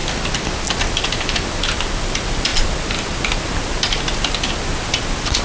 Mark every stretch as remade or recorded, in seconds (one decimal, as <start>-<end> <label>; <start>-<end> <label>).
0.0-5.4 recorded